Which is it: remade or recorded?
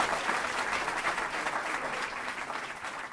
recorded